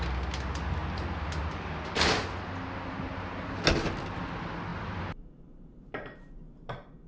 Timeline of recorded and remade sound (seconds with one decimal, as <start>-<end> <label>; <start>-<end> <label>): 0.0-7.1 recorded